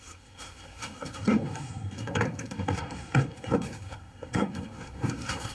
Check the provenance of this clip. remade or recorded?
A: remade